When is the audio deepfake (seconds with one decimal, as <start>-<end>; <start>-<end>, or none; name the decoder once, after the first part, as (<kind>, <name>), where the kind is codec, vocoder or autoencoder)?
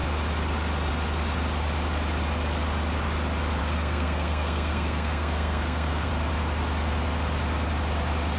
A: 3.6-6.1 (codec, SNAC)